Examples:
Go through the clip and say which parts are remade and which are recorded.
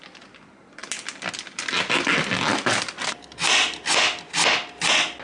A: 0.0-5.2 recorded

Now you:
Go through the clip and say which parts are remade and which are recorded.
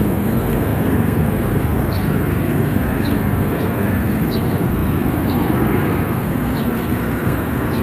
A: 0.0-7.8 remade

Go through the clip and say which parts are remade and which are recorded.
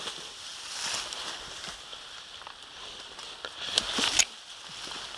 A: 0.0-5.2 recorded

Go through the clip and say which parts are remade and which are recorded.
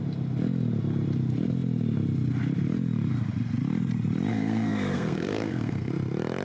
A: 0.0-4.3 recorded; 4.3-5.9 remade; 5.9-6.4 recorded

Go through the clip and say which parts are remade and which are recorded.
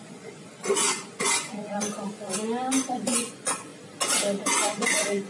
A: 0.0-2.3 remade; 2.3-2.9 recorded; 2.9-3.7 remade; 3.7-4.4 recorded; 4.4-5.3 remade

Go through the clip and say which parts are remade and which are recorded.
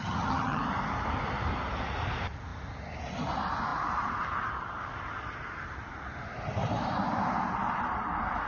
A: 0.0-0.6 remade; 0.6-8.5 recorded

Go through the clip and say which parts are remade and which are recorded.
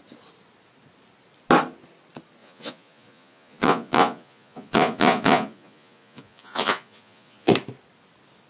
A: 0.0-2.4 recorded; 2.4-7.5 remade; 7.5-8.5 recorded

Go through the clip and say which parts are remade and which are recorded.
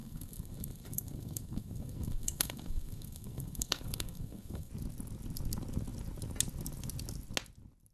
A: 0.0-4.7 remade; 4.7-7.9 recorded